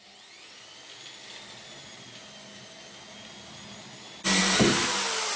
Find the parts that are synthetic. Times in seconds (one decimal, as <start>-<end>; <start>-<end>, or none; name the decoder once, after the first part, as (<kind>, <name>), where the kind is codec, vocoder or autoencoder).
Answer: none